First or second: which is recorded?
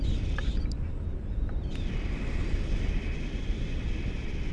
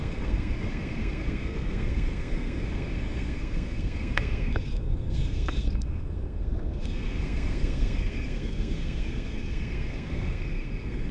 first